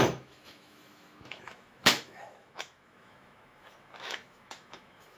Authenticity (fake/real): fake